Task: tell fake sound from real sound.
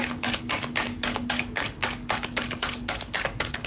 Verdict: fake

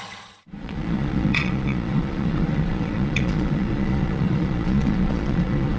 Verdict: fake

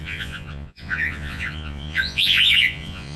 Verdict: fake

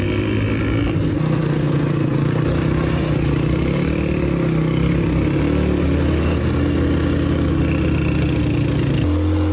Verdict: real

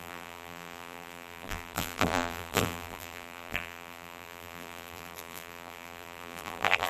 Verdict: fake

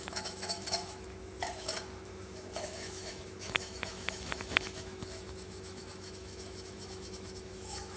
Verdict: fake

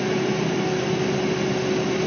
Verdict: real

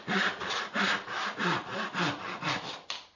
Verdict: real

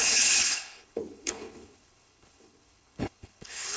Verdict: fake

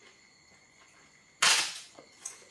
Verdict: fake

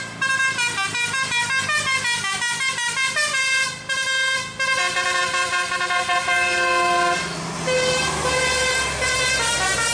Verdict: real